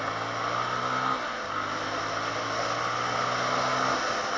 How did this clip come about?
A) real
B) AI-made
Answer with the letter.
A